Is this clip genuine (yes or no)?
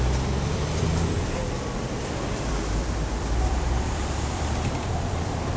no